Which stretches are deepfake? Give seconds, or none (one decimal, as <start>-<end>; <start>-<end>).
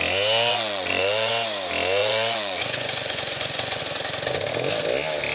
0.5-1.3; 2.0-3.8